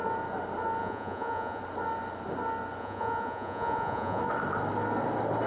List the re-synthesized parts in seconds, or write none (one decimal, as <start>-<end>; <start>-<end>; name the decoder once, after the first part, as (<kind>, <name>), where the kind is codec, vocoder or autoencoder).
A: 0.8-1.6 (vocoder, Vocos); 2.8-4.2